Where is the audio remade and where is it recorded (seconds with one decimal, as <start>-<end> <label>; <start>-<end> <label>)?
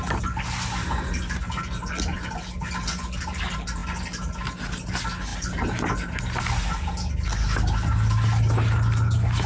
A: 0.0-9.5 recorded